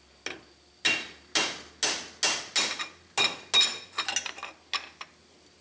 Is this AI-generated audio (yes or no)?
no